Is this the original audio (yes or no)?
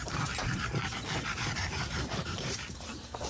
no